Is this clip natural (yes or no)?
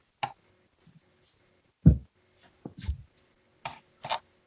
yes